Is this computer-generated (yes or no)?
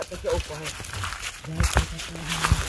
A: no